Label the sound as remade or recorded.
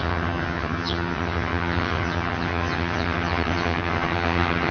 remade